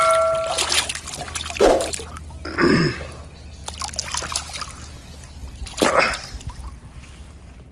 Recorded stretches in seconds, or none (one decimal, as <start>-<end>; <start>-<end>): 0.0-7.7